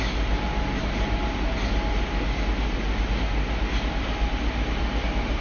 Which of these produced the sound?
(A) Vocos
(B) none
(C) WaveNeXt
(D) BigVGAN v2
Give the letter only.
B